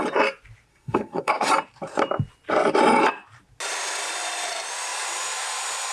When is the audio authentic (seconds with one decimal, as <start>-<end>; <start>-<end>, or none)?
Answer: 0.0-0.7; 1.5-5.9